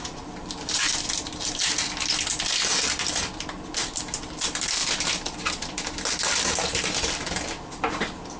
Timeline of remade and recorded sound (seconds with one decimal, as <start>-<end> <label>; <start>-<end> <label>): 0.0-8.4 recorded